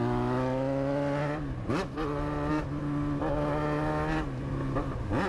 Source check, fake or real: real